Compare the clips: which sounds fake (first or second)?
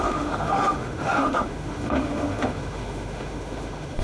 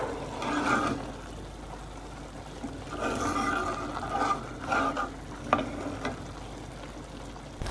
first